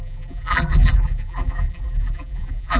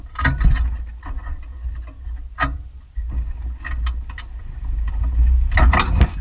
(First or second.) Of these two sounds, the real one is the second